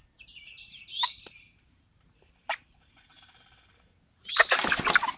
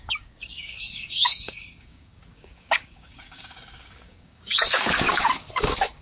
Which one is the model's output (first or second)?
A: second